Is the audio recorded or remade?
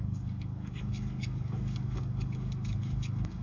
remade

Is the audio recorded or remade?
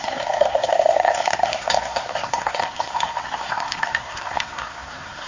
remade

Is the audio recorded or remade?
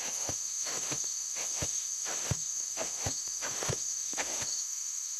remade